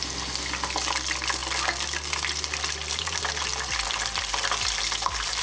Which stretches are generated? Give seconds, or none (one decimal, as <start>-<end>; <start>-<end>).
none